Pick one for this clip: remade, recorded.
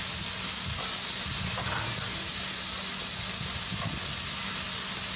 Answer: recorded